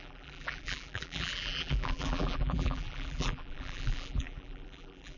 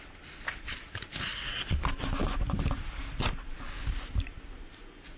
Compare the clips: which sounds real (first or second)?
second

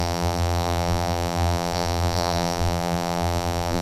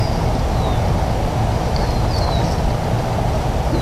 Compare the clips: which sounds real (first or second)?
second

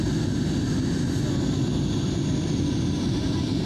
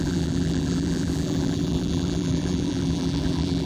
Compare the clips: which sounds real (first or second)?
first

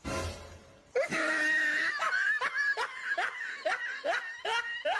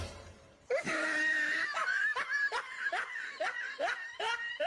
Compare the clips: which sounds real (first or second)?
first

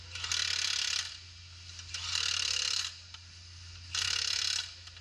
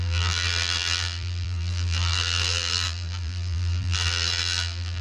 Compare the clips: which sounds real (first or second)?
first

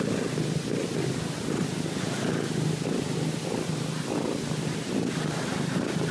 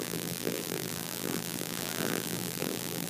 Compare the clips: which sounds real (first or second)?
first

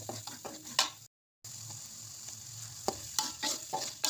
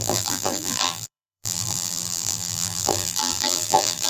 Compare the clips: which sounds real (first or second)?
first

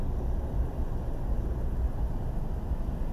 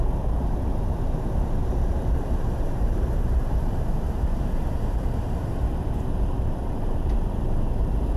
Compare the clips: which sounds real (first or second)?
first